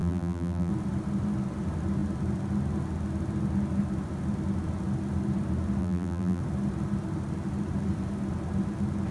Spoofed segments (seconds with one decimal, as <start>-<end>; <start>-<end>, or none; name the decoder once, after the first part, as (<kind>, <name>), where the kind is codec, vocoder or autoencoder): 0.0-0.7 (vocoder, BigVGAN v2); 5.8-6.4